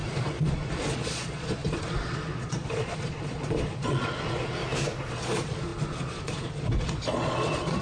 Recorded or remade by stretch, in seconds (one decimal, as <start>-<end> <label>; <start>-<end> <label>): 0.0-4.6 remade; 4.6-5.1 recorded; 5.1-7.8 remade